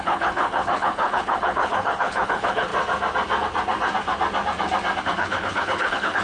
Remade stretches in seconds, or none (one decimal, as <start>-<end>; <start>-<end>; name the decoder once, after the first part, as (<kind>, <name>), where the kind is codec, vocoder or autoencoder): 0.0-2.7 (codec, HILCodec); 5.0-6.2